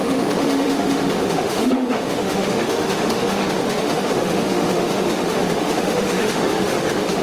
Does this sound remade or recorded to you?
remade